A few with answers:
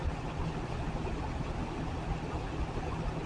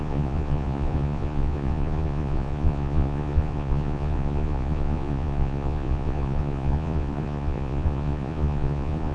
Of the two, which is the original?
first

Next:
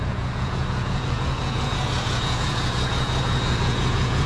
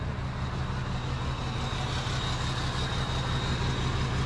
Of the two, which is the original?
second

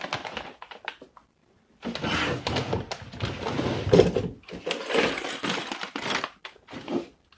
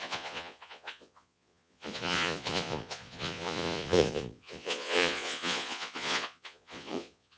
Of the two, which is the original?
first